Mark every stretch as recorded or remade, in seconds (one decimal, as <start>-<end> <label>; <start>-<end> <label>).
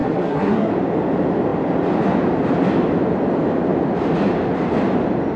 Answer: 0.0-0.7 remade; 0.7-5.4 recorded